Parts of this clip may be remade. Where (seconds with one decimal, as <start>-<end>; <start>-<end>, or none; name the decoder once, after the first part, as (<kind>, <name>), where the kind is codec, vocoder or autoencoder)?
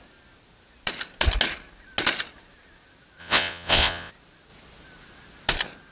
3.2-4.1 (vocoder, WaveNeXt)